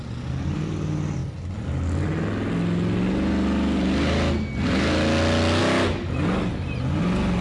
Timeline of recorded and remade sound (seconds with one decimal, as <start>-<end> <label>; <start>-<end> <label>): 0.0-7.4 recorded